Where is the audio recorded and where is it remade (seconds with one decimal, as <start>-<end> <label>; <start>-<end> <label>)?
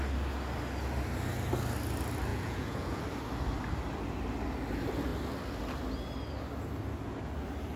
0.0-2.3 recorded; 2.3-3.0 remade; 3.0-7.8 recorded